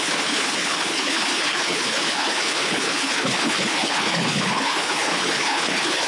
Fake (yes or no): yes